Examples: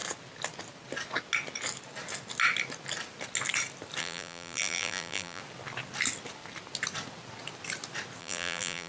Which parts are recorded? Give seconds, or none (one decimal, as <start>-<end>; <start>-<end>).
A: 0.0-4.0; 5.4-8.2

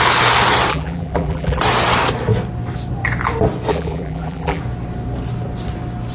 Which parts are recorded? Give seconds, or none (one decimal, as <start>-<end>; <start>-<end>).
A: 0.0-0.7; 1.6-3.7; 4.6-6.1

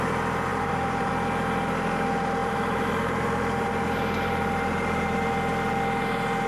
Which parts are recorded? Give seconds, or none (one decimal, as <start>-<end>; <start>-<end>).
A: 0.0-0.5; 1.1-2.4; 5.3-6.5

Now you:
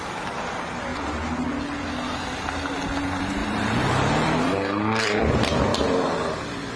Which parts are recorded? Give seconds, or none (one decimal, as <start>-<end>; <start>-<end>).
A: 0.9-3.0

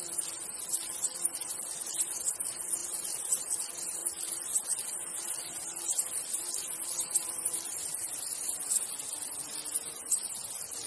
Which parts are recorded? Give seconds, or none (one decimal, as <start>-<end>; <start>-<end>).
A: 0.0-2.8; 3.6-4.0; 8.7-10.9